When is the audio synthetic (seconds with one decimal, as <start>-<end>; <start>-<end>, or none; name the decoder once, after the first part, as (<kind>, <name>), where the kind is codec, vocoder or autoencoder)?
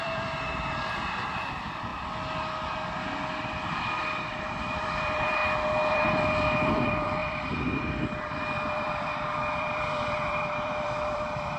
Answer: 0.0-1.9 (vocoder, BigVGAN v2); 4.3-5.4; 5.9-11.6